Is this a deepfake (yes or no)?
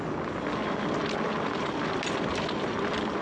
no